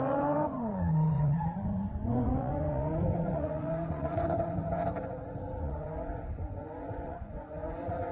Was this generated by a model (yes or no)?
yes